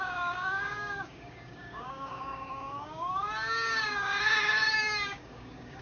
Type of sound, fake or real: fake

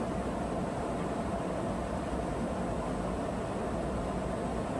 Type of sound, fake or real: real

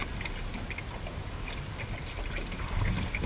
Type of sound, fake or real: real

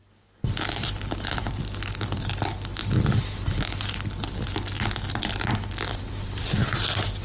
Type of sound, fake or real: real